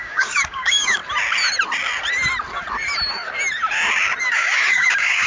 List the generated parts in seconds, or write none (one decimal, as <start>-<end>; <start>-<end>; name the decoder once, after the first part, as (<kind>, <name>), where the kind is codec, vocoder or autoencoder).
0.0-1.0 (codec, DAC); 4.2-5.3